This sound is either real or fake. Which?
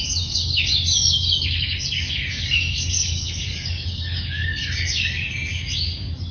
fake